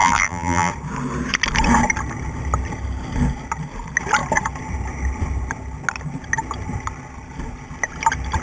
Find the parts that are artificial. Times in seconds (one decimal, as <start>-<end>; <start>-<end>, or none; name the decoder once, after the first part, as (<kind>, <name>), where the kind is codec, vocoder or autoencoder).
0.0-0.7 (vocoder, BigVGAN v2)